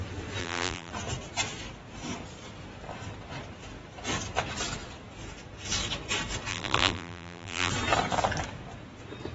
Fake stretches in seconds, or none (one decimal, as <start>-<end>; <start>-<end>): 0.4-0.9; 6.5-7.7